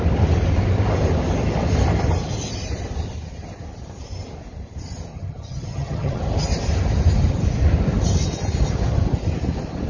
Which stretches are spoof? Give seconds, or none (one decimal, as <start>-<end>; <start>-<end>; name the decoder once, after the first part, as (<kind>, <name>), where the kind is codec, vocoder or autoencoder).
5.1-6.2 (vocoder, HiFi-GAN)